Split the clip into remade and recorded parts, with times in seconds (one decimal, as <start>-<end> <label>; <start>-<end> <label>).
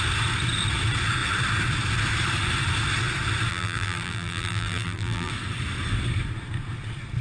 0.0-3.5 recorded; 3.5-5.3 remade; 5.3-7.2 recorded